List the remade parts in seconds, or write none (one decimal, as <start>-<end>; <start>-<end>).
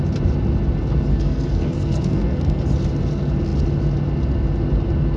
1.1-2.6